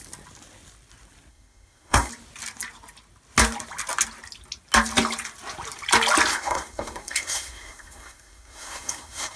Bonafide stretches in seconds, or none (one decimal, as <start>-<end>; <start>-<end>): 0.0-1.3; 2.1-6.3